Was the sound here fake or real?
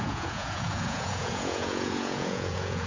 fake